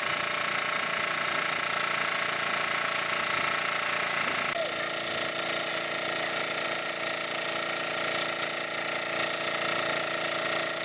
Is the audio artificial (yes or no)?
no